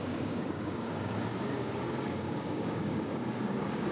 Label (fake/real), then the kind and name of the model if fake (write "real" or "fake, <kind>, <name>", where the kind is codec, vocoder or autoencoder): fake, codec, DAC